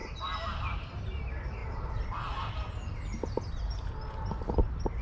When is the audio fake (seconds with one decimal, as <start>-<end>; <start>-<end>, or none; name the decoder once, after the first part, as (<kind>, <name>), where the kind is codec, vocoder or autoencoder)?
none